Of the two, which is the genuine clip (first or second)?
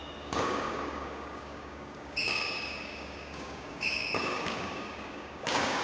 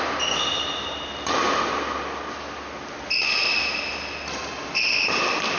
second